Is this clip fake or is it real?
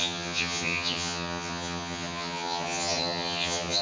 fake